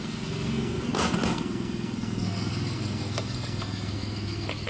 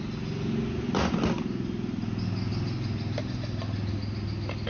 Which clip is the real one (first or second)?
second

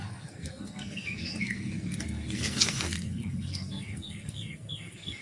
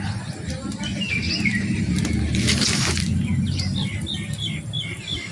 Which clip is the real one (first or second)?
second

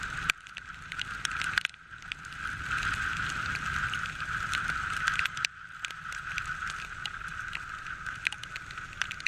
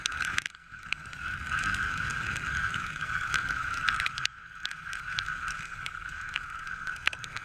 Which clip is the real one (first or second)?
first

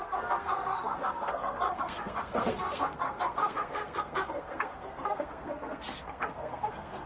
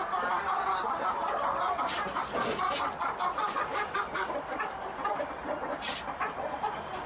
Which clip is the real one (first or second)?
second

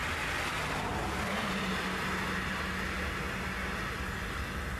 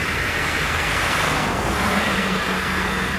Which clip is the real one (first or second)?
first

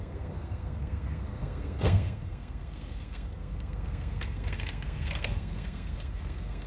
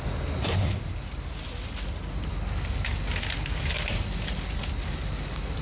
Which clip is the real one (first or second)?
second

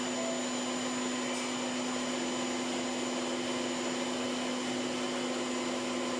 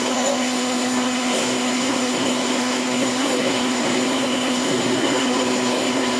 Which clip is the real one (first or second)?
first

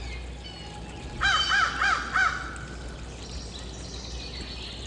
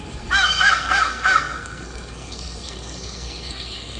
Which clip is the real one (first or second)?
first